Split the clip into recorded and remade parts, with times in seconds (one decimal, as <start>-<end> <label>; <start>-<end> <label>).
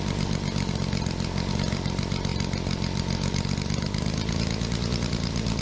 0.0-5.6 recorded